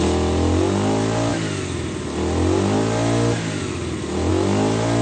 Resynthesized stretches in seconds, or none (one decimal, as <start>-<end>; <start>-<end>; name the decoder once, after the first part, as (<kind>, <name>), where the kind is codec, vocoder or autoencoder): none